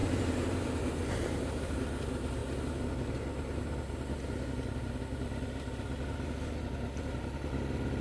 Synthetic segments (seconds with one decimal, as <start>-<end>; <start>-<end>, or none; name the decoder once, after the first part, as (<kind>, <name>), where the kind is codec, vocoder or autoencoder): 0.0-1.7 (vocoder, BigVGAN v2)